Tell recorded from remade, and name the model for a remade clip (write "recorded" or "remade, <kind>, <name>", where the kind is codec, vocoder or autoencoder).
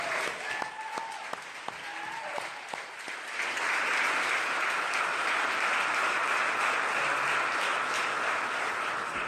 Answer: recorded